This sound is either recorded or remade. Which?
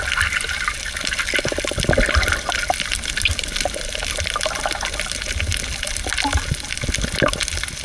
recorded